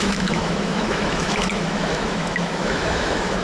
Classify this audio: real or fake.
fake